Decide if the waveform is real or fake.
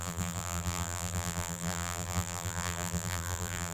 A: fake